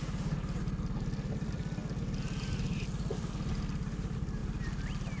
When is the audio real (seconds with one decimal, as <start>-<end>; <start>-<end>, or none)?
0.0-5.2